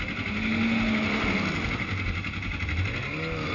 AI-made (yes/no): no